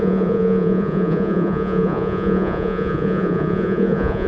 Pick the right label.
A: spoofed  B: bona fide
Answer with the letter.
A